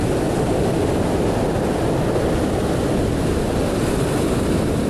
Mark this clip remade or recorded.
recorded